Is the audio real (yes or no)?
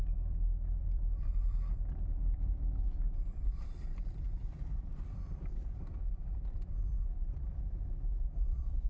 no